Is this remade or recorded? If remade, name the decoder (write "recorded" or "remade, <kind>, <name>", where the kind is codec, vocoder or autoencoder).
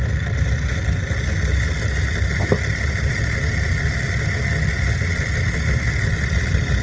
recorded